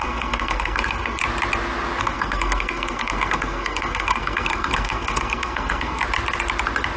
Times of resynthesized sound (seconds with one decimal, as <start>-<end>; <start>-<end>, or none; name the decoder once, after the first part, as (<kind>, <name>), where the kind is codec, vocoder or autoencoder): 0.0-1.2 (codec, SNAC); 2.0-6.0